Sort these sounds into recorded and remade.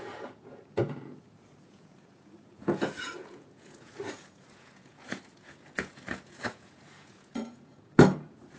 remade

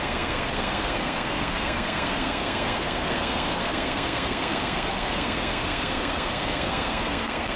remade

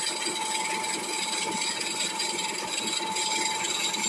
recorded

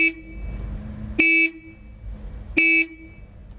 recorded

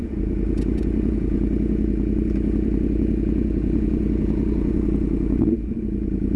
remade